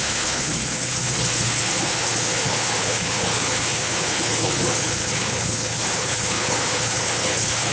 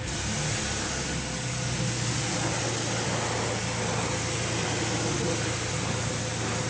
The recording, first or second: second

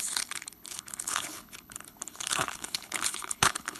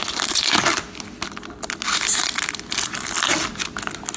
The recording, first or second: second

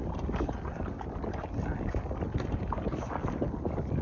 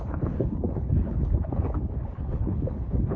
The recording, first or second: first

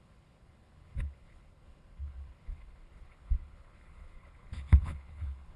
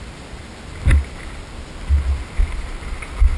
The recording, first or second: second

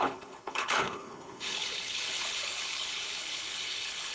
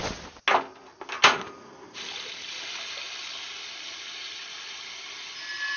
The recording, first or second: second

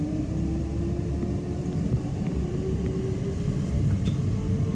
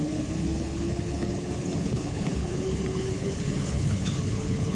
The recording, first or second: first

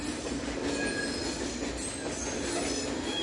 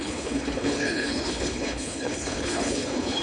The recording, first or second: first